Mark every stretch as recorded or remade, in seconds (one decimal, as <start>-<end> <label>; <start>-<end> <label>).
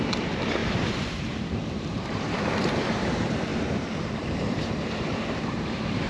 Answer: 0.0-6.1 remade